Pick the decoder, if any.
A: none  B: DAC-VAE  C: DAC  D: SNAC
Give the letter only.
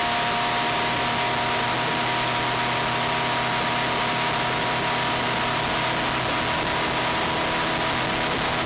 A